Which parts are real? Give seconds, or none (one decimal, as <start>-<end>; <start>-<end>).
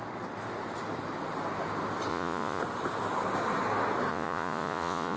0.0-2.1; 2.6-4.1